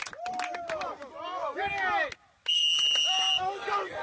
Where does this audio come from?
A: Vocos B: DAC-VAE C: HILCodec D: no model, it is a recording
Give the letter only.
D